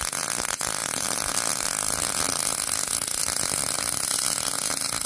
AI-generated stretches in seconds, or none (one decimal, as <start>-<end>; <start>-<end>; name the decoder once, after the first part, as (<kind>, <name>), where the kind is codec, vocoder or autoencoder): 0.8-1.3 (vocoder, BigVGAN v2); 3.2-4.4